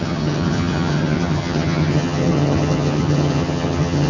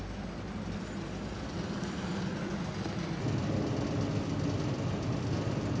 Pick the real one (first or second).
second